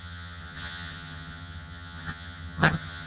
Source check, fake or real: fake